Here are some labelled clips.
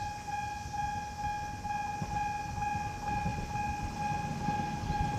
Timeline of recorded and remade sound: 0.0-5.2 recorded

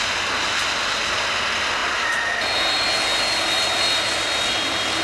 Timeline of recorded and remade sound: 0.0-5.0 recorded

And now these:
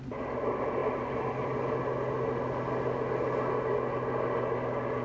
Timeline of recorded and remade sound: 0.0-5.0 recorded